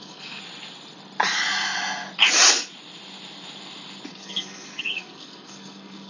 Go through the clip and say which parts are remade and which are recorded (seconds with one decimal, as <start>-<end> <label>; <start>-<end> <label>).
0.0-0.4 remade; 0.4-4.1 recorded; 4.1-6.1 remade